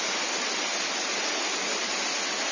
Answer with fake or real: real